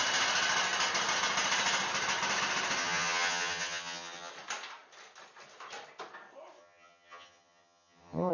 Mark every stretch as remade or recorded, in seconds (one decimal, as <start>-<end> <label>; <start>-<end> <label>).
0.0-2.8 recorded; 2.8-4.3 remade; 4.3-6.6 recorded; 6.6-8.3 remade